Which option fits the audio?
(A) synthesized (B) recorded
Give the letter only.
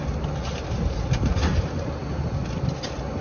B